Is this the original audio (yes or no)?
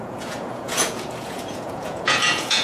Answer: no